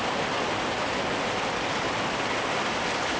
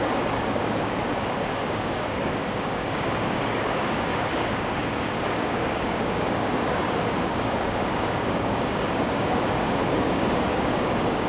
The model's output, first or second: second